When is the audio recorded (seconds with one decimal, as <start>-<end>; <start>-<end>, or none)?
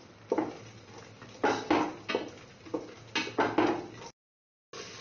0.0-5.0